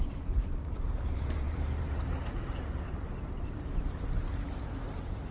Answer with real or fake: fake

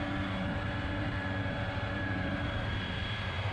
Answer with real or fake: fake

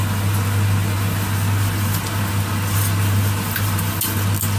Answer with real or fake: real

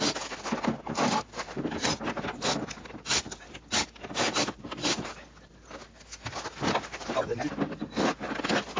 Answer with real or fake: real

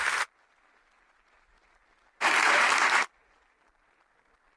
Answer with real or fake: real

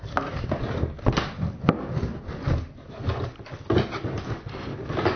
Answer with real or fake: real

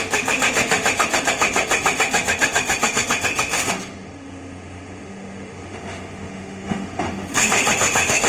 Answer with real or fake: fake